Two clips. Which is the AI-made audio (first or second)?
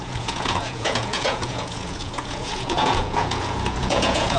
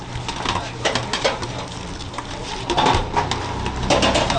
first